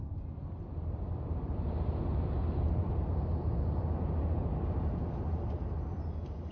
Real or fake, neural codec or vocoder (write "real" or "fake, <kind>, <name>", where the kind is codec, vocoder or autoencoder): real